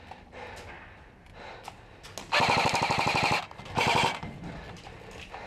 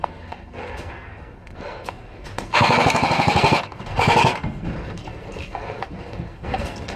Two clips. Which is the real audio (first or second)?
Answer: first